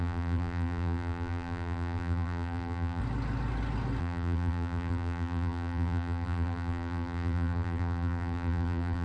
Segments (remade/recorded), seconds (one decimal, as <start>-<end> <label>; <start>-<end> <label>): 0.0-3.0 remade; 3.0-4.0 recorded; 4.0-9.0 remade